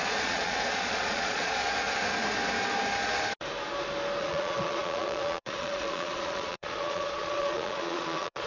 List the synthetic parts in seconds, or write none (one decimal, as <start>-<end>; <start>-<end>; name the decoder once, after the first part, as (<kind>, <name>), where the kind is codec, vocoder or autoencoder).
0.0-1.6 (vocoder, Vocos); 4.2-8.5